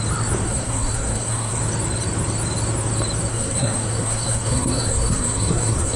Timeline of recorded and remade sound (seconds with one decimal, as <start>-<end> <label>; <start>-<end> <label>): 0.0-0.4 recorded; 0.4-1.6 remade; 1.6-3.3 recorded; 3.3-6.0 remade